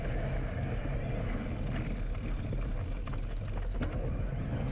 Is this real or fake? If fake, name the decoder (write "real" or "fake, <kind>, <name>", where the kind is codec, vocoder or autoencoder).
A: real